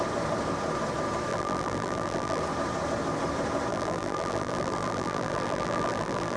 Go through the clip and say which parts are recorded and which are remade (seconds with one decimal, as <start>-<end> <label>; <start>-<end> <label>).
0.0-1.3 recorded; 1.3-2.4 remade; 2.4-3.7 recorded; 3.7-6.4 remade